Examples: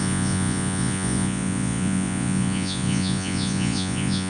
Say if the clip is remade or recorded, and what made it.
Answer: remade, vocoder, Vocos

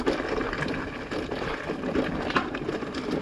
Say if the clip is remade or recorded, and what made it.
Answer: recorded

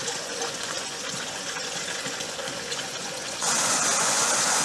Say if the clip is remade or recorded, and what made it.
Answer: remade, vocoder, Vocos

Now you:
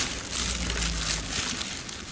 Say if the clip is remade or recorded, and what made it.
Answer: recorded